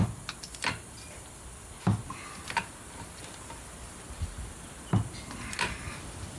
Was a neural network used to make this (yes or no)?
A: no